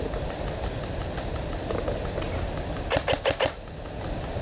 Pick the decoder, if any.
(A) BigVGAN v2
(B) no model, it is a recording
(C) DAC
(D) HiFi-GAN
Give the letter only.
B